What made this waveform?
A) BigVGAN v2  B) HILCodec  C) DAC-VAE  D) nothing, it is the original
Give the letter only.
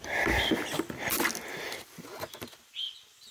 D